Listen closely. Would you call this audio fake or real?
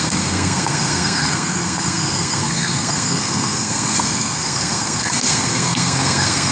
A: fake